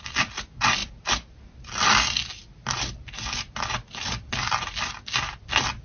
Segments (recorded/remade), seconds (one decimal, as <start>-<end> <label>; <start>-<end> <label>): 0.0-5.8 recorded